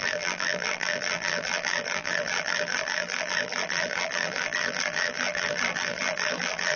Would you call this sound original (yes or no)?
no